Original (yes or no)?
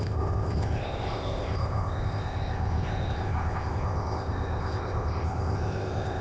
no